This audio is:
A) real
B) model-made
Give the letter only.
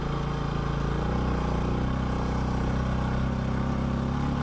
A